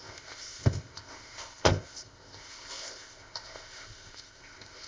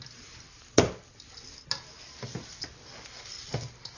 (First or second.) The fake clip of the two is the first